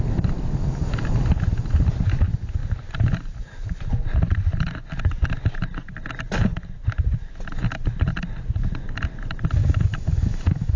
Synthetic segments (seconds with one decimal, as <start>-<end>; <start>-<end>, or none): 9.6-10.8